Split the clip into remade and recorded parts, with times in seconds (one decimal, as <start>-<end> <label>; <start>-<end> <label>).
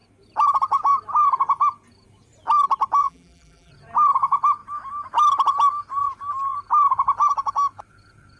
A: 0.0-3.0 recorded; 3.0-3.7 remade; 3.7-8.4 recorded